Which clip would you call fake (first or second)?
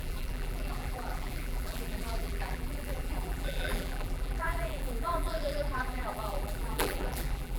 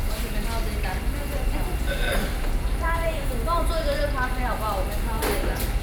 first